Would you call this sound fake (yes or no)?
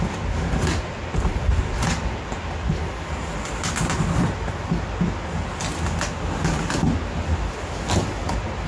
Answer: no